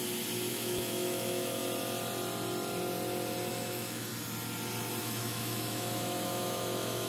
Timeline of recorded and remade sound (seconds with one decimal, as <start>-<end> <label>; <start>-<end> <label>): 0.0-0.5 recorded; 0.5-1.6 remade; 1.6-3.5 recorded; 3.5-4.1 remade; 4.1-5.0 recorded; 5.0-7.1 remade